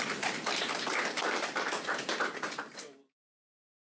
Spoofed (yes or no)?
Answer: yes